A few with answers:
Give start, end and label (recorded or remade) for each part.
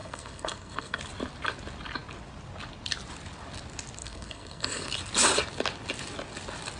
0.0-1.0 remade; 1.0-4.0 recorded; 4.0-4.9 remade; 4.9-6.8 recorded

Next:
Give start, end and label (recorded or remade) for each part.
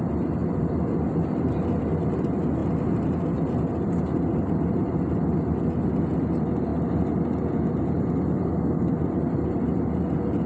0.0-0.4 recorded; 0.4-1.8 remade; 1.8-2.6 recorded; 2.6-3.4 remade; 3.4-10.5 recorded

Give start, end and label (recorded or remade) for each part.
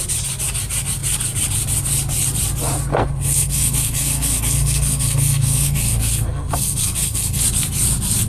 0.0-2.9 recorded; 2.9-7.4 remade; 7.4-8.3 recorded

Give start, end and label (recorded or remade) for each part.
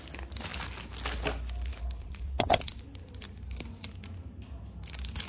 0.0-2.0 recorded; 2.0-2.7 remade; 2.7-5.3 recorded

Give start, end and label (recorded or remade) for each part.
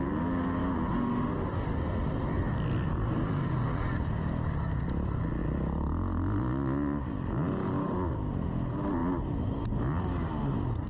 0.0-0.6 recorded; 0.6-4.0 remade; 4.0-10.9 recorded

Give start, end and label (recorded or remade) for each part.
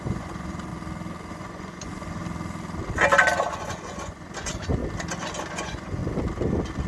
0.0-0.7 remade; 0.7-1.3 recorded; 1.3-2.2 remade; 2.2-3.5 recorded; 3.5-4.8 remade; 4.8-5.5 recorded; 5.5-6.0 remade; 6.0-6.9 recorded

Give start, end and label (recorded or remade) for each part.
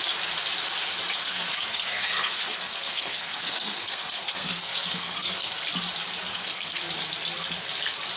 0.0-1.2 recorded; 1.2-5.5 remade; 5.5-6.3 recorded; 6.3-6.8 remade; 6.8-8.2 recorded